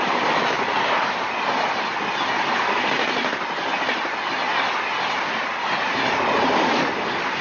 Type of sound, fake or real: real